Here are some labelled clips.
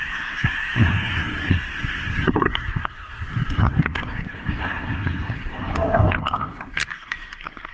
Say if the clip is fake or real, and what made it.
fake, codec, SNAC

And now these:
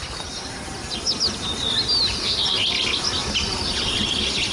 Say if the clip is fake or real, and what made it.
real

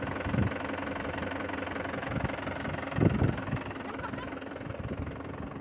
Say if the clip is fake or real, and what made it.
real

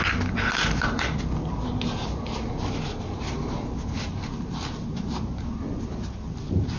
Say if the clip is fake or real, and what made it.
real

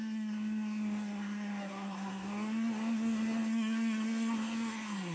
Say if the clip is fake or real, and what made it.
fake, codec, SNAC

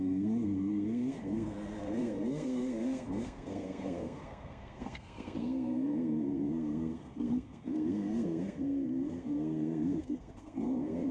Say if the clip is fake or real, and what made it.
fake, codec, SNAC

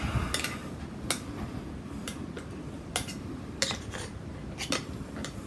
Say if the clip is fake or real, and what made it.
real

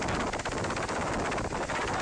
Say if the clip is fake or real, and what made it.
real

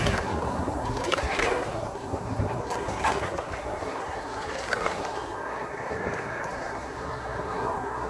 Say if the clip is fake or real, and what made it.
fake, codec, SNAC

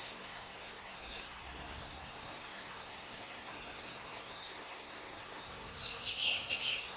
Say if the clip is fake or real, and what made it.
fake, codec, SNAC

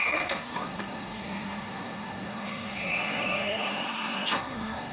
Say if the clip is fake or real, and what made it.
fake, codec, SNAC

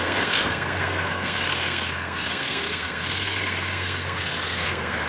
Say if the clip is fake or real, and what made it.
fake, codec, SNAC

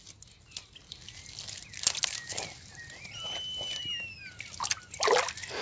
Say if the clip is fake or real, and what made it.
real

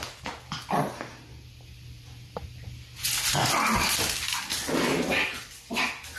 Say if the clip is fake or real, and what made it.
real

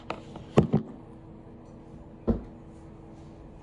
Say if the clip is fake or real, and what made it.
real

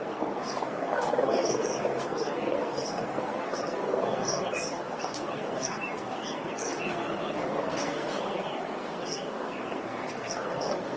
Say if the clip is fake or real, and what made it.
fake, codec, SNAC